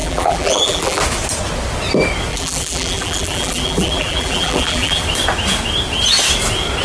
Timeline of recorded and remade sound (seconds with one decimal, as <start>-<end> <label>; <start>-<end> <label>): 0.0-1.0 remade; 1.0-2.3 recorded; 2.3-5.0 remade; 5.0-6.8 recorded